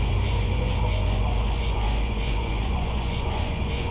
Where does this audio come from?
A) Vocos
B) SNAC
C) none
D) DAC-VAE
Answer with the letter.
A